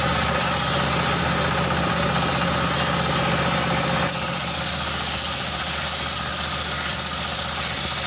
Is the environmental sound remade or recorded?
recorded